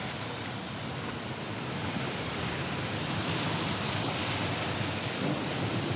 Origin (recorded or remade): remade